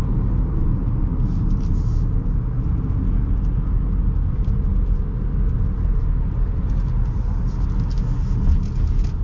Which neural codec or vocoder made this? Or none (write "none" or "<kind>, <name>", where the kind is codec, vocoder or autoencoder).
none